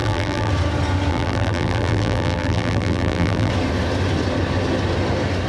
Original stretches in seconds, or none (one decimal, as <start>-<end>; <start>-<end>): 0.5-1.1; 3.5-5.5